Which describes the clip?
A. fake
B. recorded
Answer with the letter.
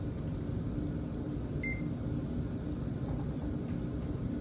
B